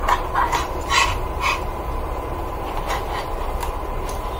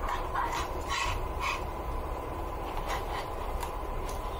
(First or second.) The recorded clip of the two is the first